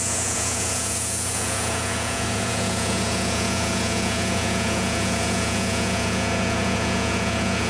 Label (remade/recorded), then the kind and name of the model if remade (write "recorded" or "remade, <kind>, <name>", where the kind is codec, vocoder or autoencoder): remade, vocoder, Vocos